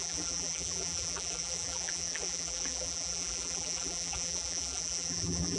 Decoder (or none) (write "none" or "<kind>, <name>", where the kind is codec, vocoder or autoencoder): vocoder, BigVGAN v2